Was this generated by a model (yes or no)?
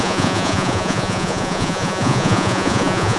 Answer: yes